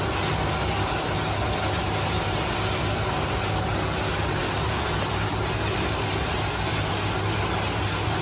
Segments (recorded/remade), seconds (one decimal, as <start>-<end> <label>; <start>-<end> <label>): 0.0-8.2 recorded